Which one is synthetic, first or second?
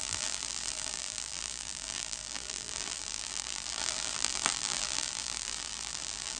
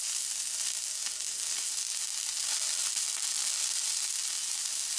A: first